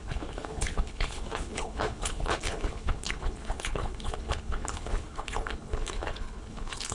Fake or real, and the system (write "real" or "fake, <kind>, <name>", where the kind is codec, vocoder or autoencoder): fake, codec, HILCodec